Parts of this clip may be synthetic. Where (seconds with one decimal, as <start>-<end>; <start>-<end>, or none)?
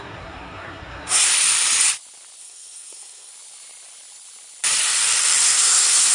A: 0.0-1.3; 2.4-3.3; 5.4-6.1